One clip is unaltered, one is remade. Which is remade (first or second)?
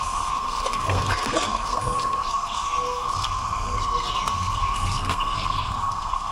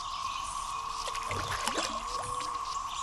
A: first